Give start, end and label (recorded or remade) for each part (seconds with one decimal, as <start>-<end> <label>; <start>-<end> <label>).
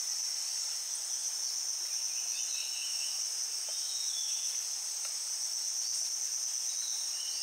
0.0-2.6 recorded; 2.6-3.2 remade; 3.2-3.8 recorded; 3.8-4.5 remade; 4.5-7.4 recorded